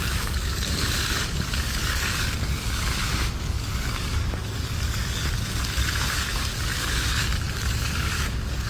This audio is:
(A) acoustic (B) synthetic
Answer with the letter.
B